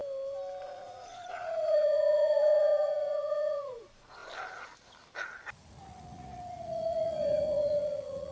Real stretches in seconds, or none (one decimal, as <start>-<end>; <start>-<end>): 0.0-0.6; 4.2-5.5